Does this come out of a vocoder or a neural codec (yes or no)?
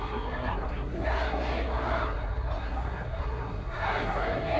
yes